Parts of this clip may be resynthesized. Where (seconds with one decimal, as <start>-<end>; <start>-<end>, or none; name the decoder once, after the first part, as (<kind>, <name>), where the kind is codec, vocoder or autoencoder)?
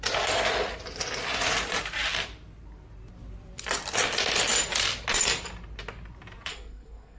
6.5-7.2 (codec, SNAC)